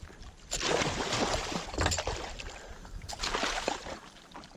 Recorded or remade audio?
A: recorded